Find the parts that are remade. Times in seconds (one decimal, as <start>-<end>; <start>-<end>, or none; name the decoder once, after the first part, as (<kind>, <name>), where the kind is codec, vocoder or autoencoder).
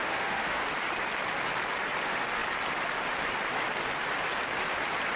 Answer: 0.0-0.6 (autoencoder, DAC-VAE)